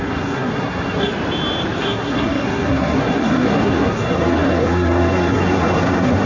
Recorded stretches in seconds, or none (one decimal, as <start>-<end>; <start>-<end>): 1.1-1.8